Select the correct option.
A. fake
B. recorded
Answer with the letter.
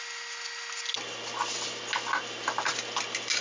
B